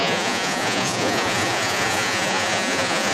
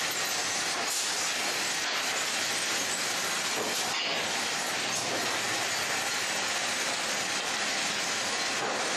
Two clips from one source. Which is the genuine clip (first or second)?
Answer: second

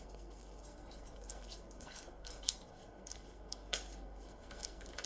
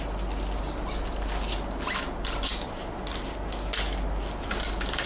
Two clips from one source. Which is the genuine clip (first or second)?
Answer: second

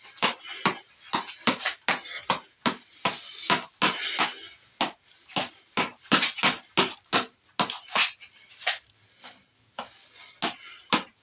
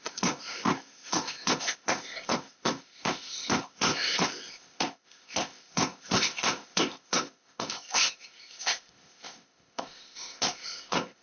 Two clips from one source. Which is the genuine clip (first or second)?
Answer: first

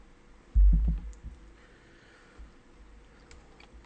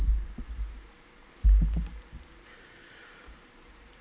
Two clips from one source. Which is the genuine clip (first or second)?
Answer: first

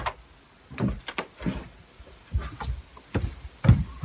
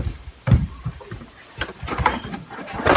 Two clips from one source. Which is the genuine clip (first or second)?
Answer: first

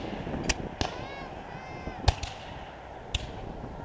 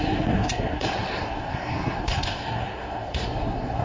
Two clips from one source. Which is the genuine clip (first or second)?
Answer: first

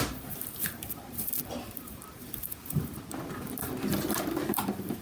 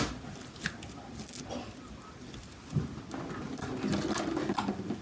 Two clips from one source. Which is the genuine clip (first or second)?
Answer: second